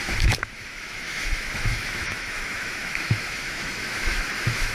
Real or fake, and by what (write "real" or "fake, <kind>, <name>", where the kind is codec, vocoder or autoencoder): fake, autoencoder, DAC-VAE